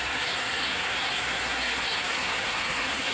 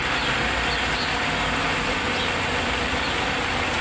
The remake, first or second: first